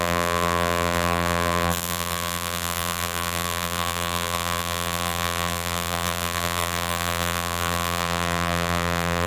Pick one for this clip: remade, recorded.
remade